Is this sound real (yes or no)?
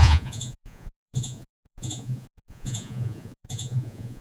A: no